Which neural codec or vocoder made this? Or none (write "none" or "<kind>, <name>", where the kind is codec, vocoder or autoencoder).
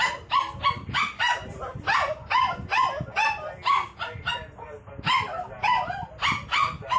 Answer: none